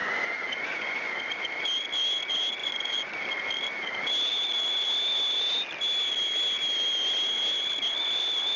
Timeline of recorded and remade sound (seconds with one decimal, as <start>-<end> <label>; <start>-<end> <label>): 0.0-1.2 remade; 1.2-2.6 recorded; 2.6-3.1 remade; 3.1-8.6 recorded